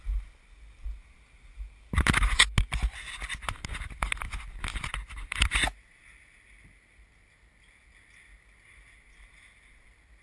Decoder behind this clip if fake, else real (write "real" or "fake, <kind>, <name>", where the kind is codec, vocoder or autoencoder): real